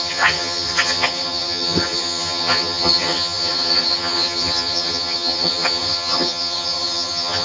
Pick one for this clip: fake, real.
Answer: fake